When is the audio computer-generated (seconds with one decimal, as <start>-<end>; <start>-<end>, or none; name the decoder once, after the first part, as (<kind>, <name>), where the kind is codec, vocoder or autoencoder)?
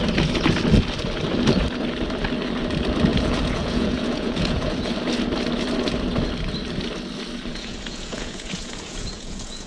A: 3.1-4.9 (vocoder, Vocos); 7.5-9.7